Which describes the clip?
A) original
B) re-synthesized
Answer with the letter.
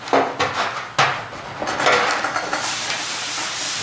A